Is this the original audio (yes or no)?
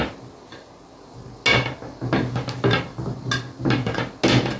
yes